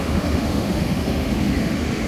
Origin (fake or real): fake